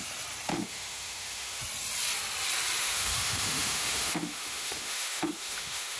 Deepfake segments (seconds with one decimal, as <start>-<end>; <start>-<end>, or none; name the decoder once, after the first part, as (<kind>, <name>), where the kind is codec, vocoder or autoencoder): 0.5-1.6 (autoencoder, DAC-VAE); 2.8-6.0